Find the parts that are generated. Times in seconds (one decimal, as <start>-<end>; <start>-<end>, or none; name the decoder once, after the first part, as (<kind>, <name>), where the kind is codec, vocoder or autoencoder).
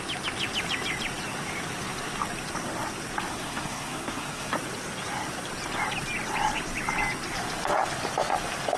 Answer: 3.3-4.5 (codec, SNAC)